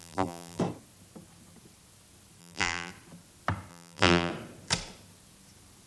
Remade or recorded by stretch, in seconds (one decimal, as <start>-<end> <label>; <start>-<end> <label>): 0.0-0.6 remade; 0.6-2.4 recorded; 2.4-2.9 remade; 2.9-3.7 recorded; 3.7-4.3 remade; 4.3-5.9 recorded